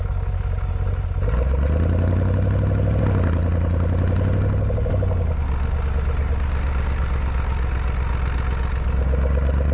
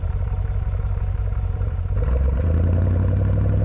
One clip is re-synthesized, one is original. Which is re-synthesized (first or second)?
second